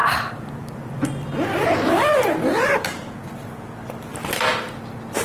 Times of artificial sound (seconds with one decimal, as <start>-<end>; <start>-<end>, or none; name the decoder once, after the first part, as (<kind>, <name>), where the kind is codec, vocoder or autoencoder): none

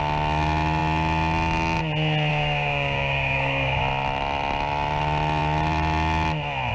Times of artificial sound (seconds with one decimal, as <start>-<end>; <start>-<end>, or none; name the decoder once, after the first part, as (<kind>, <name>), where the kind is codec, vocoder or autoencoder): 2.3-3.8 (codec, DAC)